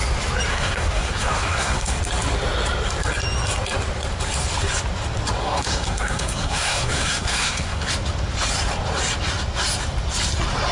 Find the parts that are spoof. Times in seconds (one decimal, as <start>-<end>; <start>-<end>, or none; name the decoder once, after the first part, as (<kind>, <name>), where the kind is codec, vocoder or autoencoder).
0.5-2.0 (codec, SNAC); 5.4-7.9